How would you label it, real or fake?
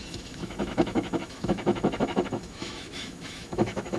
fake